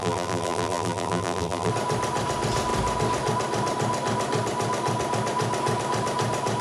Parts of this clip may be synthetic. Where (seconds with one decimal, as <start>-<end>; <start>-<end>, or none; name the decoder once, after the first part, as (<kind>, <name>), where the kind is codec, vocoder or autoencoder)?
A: 0.0-1.7 (vocoder, BigVGAN v2)